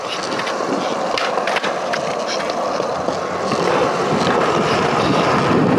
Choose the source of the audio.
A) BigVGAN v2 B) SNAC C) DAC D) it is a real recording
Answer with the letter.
D